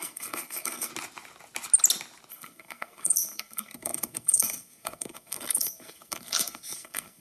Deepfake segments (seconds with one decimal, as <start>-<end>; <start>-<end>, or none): 0.0-0.9; 2.3-7.2